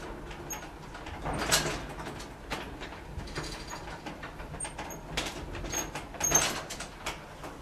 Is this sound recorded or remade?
recorded